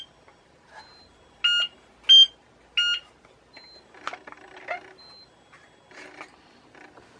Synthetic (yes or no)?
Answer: no